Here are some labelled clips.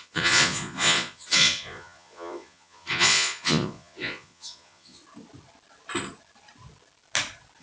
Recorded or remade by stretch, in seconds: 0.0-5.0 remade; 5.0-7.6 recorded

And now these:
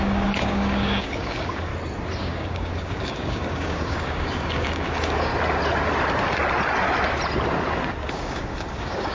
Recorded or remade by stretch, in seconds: 0.0-1.7 remade; 1.7-2.2 recorded; 2.2-5.3 remade; 5.3-8.1 recorded; 8.1-9.1 remade

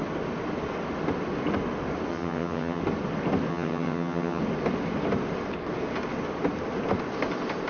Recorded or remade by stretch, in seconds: 0.0-2.1 recorded; 2.1-2.8 remade; 2.8-3.5 recorded; 3.5-4.4 remade; 4.4-7.7 recorded

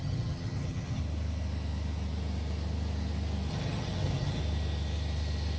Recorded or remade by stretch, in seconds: 0.0-1.0 remade; 1.0-3.5 recorded; 3.5-4.4 remade; 4.4-5.6 recorded

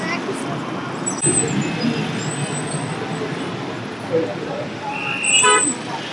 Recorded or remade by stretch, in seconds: 0.0-4.3 recorded; 4.3-5.0 remade; 5.0-6.1 recorded

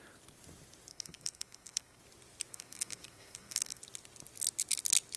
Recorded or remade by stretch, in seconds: 0.0-0.9 recorded; 0.9-2.0 remade; 2.0-2.5 recorded; 2.5-3.8 remade; 3.8-5.2 recorded

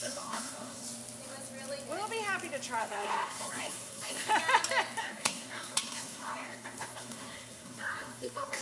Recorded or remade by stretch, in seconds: 0.0-0.8 remade; 0.8-2.8 recorded; 2.8-4.3 remade; 4.3-5.0 recorded; 5.0-8.6 remade